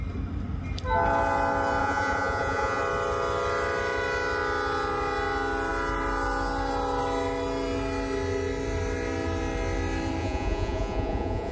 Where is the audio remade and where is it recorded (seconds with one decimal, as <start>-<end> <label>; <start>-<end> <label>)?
0.0-1.8 recorded; 1.8-2.8 remade; 2.8-10.2 recorded; 10.2-11.5 remade